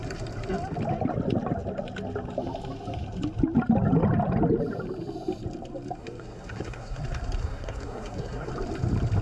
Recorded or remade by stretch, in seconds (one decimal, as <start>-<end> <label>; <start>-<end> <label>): 0.0-6.0 recorded; 6.0-7.0 remade; 7.0-7.4 recorded; 7.4-8.5 remade; 8.5-9.2 recorded